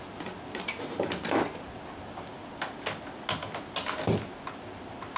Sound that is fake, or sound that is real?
real